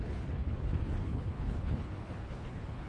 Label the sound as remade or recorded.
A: remade